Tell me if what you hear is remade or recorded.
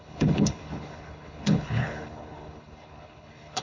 remade